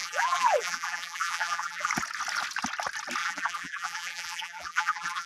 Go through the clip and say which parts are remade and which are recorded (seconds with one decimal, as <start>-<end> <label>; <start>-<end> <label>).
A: 0.0-1.9 remade; 1.9-3.2 recorded; 3.2-5.3 remade